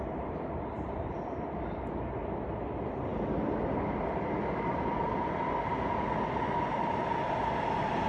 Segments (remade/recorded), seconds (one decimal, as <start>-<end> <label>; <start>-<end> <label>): 0.0-8.1 recorded